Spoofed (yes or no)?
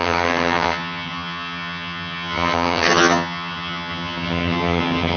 yes